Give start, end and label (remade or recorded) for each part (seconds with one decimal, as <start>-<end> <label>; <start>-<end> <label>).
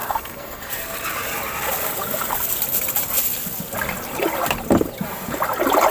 0.0-0.7 remade; 0.7-5.9 recorded